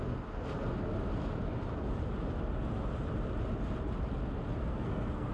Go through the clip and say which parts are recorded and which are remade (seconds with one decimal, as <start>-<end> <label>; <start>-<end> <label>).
0.0-4.6 recorded; 4.6-5.3 remade